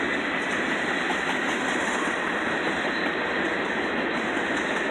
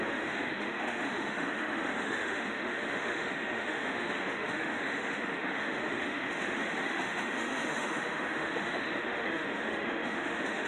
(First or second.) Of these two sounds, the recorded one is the first